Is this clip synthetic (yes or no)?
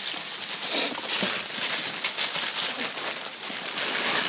no